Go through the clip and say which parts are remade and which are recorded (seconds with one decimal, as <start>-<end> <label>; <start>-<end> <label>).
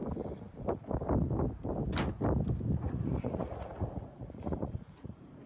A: 0.0-2.8 recorded; 2.8-5.5 remade